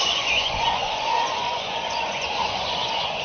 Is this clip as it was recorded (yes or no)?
no